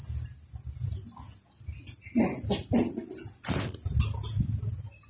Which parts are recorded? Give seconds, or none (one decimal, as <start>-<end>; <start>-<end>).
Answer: 0.0-5.1